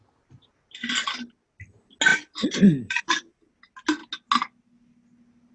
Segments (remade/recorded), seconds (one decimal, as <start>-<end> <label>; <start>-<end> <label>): 0.0-2.1 recorded; 2.1-3.6 remade; 3.6-5.5 recorded